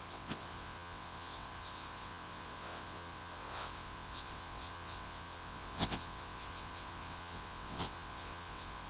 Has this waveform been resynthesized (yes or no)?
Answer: yes